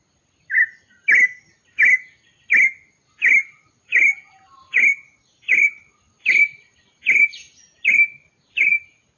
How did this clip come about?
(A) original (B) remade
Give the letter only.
A